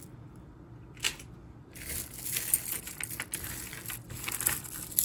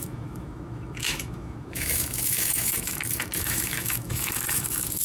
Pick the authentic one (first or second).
first